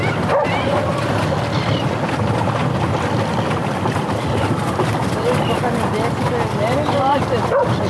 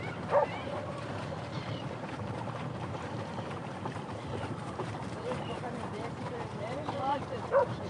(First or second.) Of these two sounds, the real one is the first